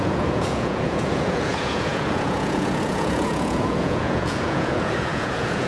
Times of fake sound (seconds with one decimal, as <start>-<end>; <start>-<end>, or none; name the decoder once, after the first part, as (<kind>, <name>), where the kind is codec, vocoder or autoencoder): 0.0-5.7 (vocoder, Vocos)